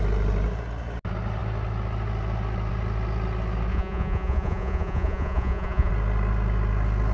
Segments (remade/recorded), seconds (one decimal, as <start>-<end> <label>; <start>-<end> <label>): 0.0-3.7 recorded; 3.7-5.9 remade; 5.9-7.1 recorded